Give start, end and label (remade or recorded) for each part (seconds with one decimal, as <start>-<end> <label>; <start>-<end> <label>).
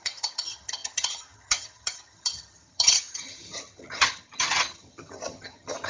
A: 0.0-5.9 remade